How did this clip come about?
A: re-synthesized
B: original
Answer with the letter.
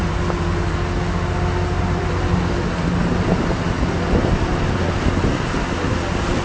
B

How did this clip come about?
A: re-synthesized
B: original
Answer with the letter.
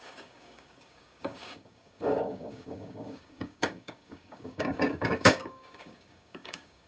A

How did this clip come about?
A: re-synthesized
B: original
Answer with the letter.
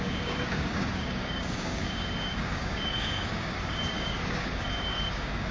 A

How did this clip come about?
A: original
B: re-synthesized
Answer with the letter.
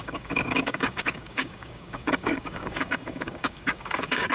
B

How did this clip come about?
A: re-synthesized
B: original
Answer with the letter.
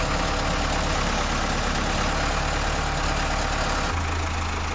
B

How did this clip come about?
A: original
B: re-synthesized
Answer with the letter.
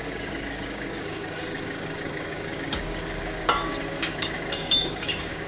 B